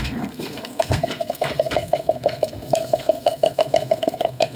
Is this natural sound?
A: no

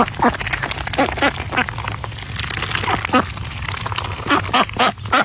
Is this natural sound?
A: yes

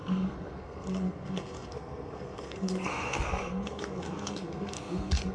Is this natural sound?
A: no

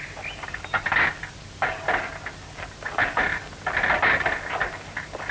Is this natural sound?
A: yes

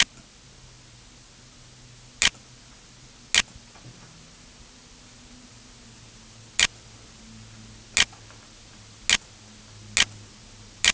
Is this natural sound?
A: yes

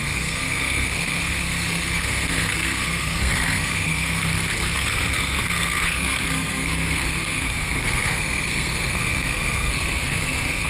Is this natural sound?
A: no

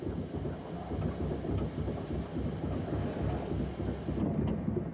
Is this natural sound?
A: yes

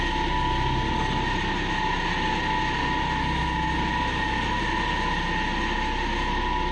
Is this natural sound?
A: yes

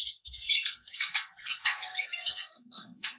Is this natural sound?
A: no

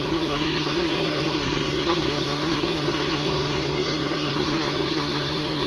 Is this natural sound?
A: no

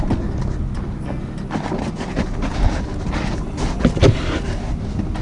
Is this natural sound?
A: yes